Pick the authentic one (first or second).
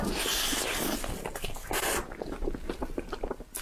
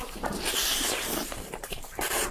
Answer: first